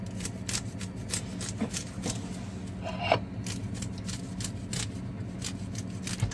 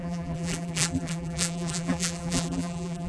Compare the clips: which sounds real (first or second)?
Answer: first